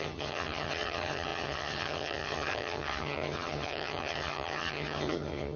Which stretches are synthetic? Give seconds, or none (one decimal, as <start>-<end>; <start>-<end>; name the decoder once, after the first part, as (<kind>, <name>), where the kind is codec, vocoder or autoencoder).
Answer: 0.0-5.6 (vocoder, HiFi-GAN)